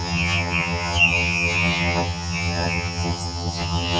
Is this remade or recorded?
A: remade